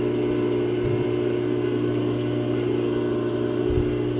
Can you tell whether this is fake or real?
real